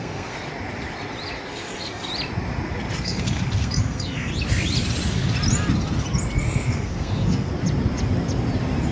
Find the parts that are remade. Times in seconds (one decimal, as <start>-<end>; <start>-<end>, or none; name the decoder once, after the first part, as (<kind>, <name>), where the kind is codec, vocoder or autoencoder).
0.0-0.5 (codec, SNAC); 1.5-2.1; 2.9-4.3; 6.4-7.5